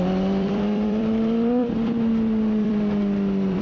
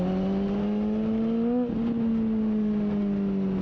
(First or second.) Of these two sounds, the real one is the second